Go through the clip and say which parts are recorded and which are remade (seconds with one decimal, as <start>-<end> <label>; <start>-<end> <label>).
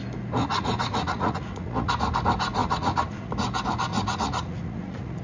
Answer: 0.0-0.4 recorded; 0.4-1.9 remade; 1.9-2.6 recorded; 2.6-3.3 remade; 3.3-3.9 recorded; 3.9-5.2 remade